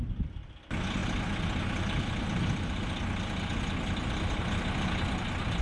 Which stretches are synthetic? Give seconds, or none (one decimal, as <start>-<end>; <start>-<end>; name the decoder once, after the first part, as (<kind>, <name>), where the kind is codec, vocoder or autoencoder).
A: none